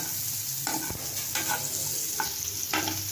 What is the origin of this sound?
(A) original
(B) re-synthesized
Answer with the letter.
A